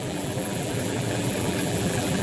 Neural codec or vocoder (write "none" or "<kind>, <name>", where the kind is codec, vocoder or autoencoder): vocoder, BigVGAN v2